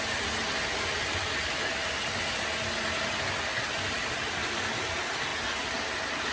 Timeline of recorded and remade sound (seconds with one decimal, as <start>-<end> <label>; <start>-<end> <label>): 0.0-6.3 recorded

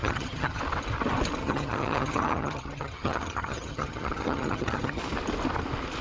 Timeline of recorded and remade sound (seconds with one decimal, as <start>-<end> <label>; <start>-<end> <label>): 0.0-0.6 remade; 0.6-1.4 recorded; 1.4-5.0 remade; 5.0-6.0 recorded

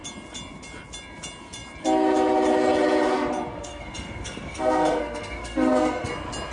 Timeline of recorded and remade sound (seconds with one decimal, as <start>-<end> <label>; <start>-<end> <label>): 0.0-3.5 recorded; 3.5-6.1 remade; 6.1-6.5 recorded

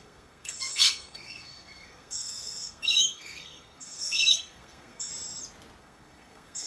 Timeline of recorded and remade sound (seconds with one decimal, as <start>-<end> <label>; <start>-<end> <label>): 0.0-5.1 remade; 5.1-5.8 recorded; 5.8-6.7 remade

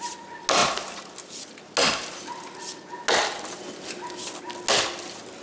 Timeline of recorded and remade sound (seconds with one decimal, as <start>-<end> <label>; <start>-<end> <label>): 0.0-5.4 recorded

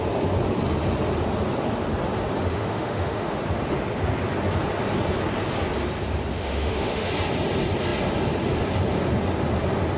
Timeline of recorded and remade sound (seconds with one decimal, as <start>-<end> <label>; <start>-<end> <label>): 0.0-2.5 recorded; 2.5-3.4 remade; 3.4-6.3 recorded; 6.3-7.1 remade; 7.1-10.0 recorded

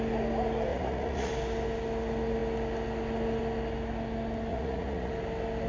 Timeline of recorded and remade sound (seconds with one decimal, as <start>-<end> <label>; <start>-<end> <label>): 0.0-0.7 recorded; 0.7-1.3 remade; 1.3-4.5 recorded; 4.5-5.1 remade; 5.1-5.7 recorded

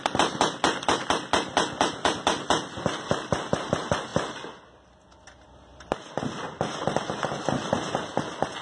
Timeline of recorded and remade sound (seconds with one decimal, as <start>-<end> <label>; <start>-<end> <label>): 0.0-8.6 recorded